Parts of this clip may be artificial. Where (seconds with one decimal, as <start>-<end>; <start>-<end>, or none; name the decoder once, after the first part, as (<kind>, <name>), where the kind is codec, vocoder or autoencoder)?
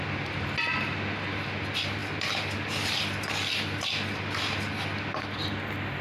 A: none